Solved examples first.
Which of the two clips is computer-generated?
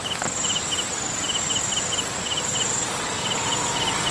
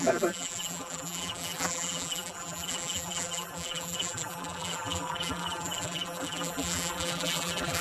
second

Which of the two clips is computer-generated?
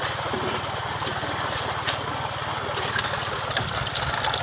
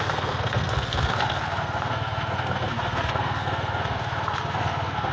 second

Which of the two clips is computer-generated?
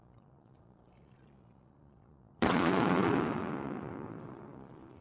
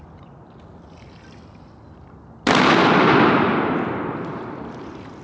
first